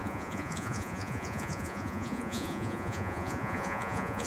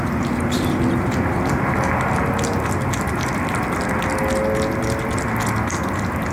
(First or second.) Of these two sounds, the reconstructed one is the first